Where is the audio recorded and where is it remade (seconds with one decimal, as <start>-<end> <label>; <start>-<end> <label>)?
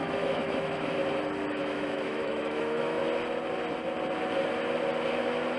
0.0-1.0 remade; 1.0-1.5 recorded; 1.5-3.0 remade; 3.0-5.6 recorded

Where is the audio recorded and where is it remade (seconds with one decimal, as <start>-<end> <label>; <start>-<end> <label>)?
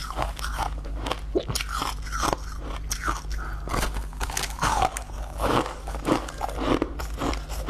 0.0-1.1 remade; 1.1-4.1 recorded; 4.1-6.4 remade; 6.4-7.7 recorded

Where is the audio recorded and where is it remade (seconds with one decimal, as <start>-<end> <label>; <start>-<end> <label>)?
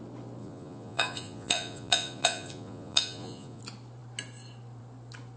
0.0-0.4 recorded; 0.4-3.6 remade; 3.6-5.4 recorded